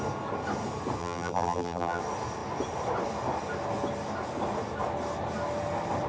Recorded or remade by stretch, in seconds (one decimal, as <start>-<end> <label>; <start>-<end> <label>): 0.0-1.0 recorded; 1.0-2.0 remade; 2.0-6.1 recorded